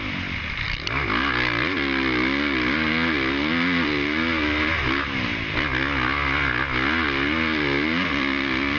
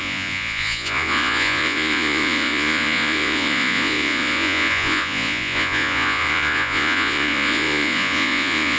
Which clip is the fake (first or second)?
second